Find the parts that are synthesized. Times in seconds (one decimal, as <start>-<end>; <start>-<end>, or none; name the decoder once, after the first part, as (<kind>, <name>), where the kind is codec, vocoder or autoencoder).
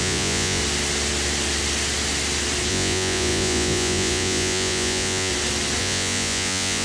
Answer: 0.0-0.6 (vocoder, Vocos); 2.7-5.3; 5.8-6.8